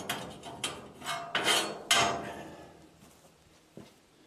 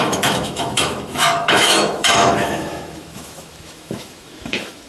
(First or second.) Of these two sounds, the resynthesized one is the second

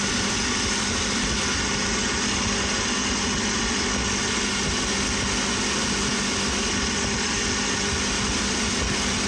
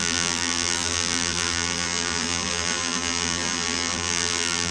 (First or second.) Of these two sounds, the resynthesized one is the second